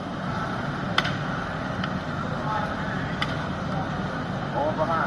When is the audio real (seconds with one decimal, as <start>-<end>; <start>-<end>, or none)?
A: 0.0-5.1